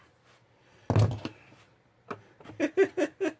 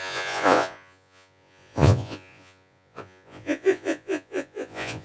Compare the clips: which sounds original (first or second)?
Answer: first